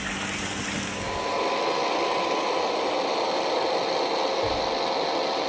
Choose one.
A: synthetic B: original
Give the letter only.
B